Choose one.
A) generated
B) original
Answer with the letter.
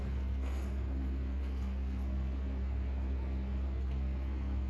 A